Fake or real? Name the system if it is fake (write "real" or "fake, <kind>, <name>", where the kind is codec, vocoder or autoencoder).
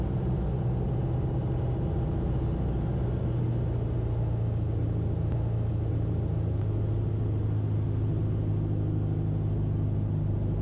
real